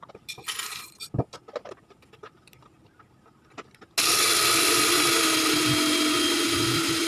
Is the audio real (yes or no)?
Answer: yes